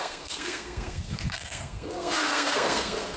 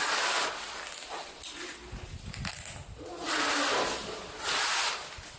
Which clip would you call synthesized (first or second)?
first